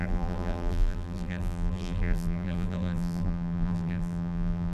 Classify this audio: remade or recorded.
remade